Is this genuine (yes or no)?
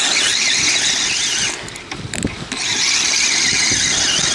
yes